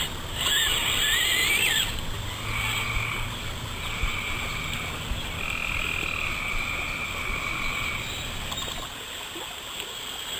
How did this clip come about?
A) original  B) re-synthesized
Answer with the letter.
A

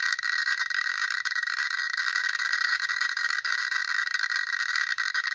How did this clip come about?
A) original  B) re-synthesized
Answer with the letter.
B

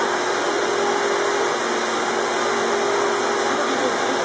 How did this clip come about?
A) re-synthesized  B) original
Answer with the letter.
B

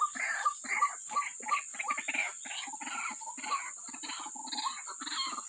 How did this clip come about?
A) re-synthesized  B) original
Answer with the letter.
B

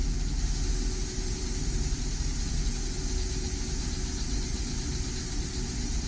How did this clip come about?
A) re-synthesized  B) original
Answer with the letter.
B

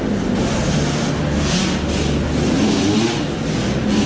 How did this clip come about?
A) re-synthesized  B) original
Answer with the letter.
B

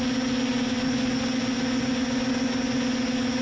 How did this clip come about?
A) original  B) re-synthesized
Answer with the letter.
A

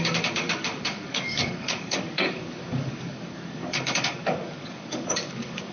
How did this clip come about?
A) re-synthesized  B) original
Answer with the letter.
A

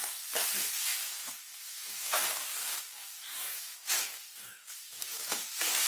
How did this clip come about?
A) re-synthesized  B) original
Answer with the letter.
A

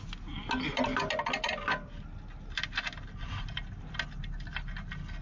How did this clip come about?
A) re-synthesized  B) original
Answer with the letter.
B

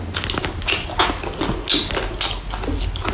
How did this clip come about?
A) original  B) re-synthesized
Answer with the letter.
A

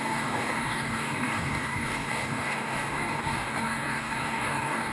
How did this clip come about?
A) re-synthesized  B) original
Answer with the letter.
A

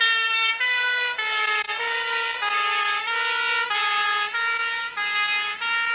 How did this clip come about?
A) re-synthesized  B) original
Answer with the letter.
B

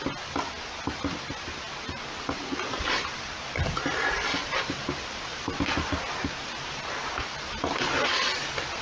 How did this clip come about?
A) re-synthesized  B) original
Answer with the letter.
B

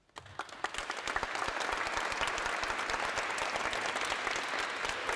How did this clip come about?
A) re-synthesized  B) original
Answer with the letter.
B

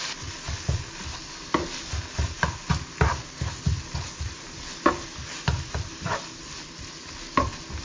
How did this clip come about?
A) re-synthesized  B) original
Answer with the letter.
B